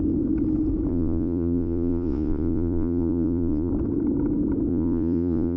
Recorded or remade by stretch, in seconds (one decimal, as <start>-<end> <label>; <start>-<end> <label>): 0.0-0.9 recorded; 0.9-3.7 remade; 3.7-4.7 recorded; 4.7-5.6 remade